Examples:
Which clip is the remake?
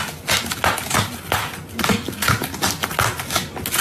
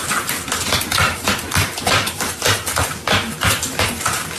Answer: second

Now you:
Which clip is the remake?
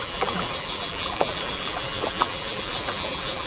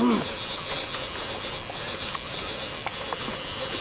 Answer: first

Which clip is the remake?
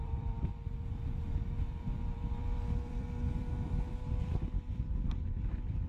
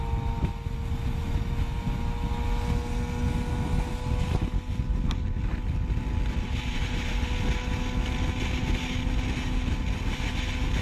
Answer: first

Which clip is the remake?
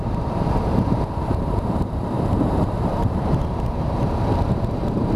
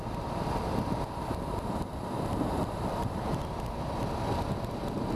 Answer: first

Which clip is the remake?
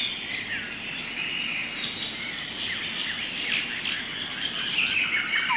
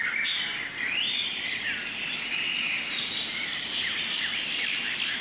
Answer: second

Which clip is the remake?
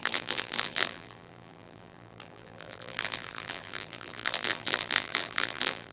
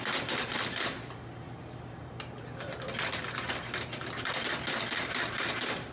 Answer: first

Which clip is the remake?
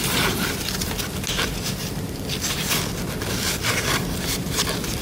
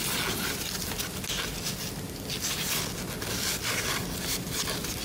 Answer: first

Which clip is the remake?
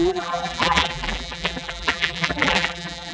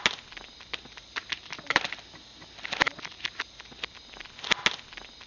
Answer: first